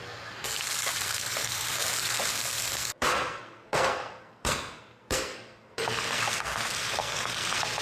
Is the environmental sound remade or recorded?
remade